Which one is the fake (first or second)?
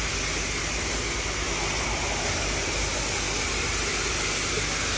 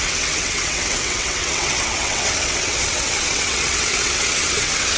second